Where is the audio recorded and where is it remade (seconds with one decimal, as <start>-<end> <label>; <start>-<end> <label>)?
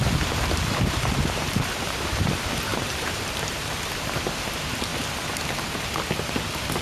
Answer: 0.0-4.9 remade; 4.9-6.1 recorded; 6.1-6.8 remade